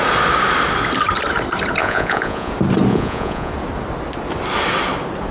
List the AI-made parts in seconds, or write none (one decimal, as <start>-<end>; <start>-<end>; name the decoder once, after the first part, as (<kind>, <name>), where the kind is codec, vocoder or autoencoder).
1.8-2.5 (vocoder, Vocos); 2.9-3.5